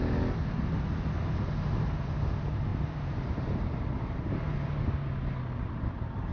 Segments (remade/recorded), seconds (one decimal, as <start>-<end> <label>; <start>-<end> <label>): 0.0-2.7 recorded; 2.7-4.4 remade; 4.4-6.3 recorded